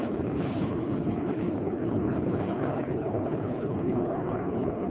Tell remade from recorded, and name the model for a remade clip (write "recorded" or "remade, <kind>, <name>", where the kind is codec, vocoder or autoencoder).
remade, codec, HILCodec